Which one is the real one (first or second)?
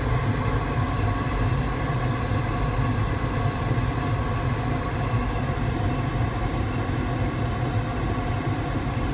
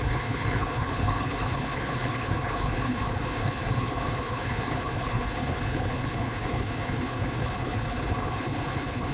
first